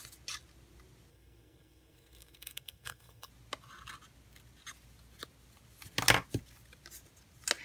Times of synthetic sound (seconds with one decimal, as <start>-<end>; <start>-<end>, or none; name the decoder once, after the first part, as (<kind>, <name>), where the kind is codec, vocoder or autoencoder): 1.1-3.3 (codec, SNAC)